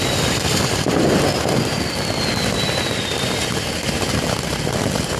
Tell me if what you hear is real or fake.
real